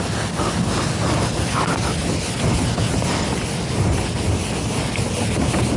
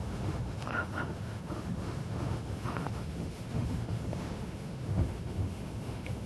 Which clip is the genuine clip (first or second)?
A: first